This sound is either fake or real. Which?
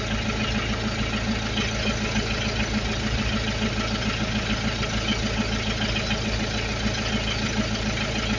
real